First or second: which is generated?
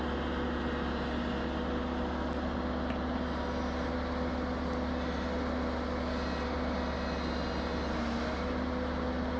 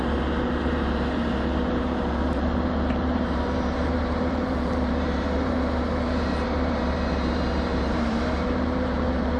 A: second